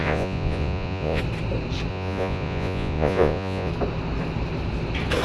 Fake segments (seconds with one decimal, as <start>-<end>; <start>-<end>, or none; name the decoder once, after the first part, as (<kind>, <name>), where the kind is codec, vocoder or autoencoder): 0.0-1.2 (vocoder, Vocos); 1.9-3.7